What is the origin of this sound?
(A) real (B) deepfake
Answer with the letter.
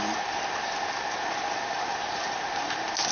A